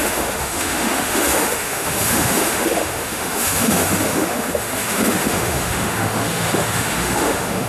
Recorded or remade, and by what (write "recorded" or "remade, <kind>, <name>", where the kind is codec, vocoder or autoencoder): remade, autoencoder, DAC-VAE